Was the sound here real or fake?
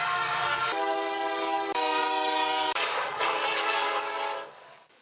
fake